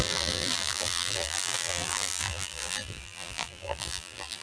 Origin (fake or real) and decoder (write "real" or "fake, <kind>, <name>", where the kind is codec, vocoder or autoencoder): fake, vocoder, BigVGAN v2